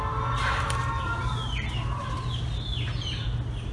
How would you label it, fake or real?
real